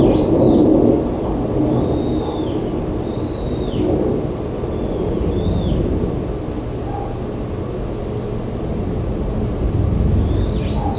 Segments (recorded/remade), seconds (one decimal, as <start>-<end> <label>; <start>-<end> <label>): 0.0-11.0 recorded

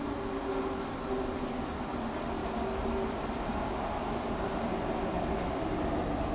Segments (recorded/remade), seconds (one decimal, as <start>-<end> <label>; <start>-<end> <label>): 0.0-6.3 recorded

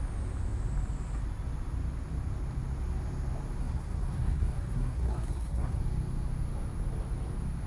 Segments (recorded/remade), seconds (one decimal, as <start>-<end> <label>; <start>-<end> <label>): 0.0-3.6 recorded; 3.6-5.8 remade; 5.8-7.7 recorded

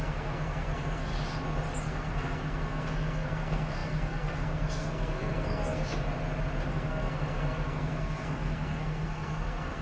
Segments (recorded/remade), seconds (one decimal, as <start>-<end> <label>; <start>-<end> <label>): 0.0-1.1 remade; 1.1-1.8 recorded; 1.8-5.8 remade; 5.8-6.7 recorded; 6.7-9.8 remade

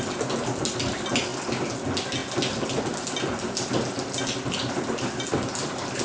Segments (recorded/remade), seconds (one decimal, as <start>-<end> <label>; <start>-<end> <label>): 0.0-6.0 recorded